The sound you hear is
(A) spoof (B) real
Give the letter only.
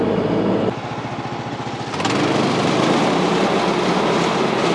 A